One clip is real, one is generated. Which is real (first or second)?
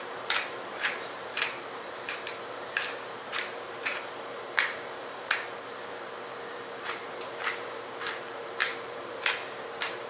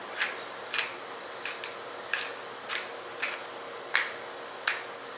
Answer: second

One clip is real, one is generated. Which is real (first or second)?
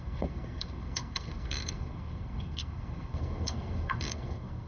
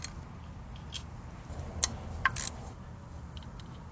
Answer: second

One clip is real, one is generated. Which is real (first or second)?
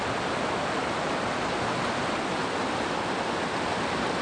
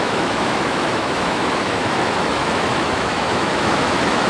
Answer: first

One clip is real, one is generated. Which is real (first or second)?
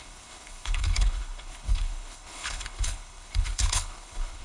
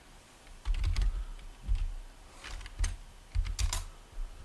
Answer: second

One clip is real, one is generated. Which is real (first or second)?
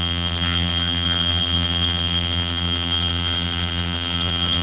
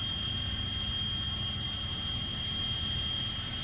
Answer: second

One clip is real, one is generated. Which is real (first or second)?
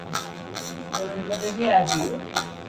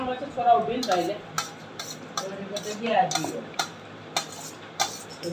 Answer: second